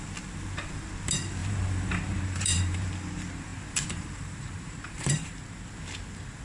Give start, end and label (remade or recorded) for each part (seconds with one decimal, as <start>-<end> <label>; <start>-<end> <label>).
0.0-1.4 recorded; 1.4-2.9 remade; 2.9-3.5 recorded; 3.5-5.4 remade; 5.4-6.4 recorded